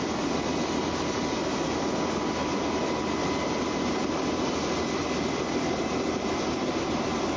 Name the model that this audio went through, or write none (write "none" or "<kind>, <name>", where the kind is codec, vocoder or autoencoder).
vocoder, BigVGAN v2